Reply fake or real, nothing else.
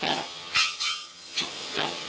fake